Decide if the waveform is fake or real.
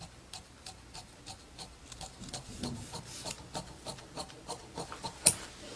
real